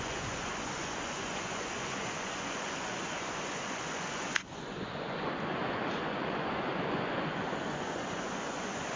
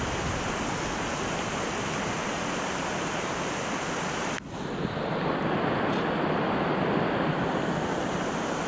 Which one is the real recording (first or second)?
second